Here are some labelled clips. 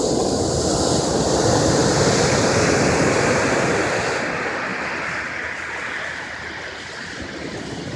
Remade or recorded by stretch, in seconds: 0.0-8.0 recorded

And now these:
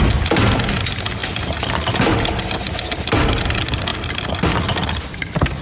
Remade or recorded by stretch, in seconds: 0.0-5.6 recorded